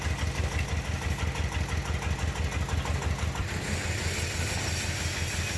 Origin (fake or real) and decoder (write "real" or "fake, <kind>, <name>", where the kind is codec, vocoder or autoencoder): real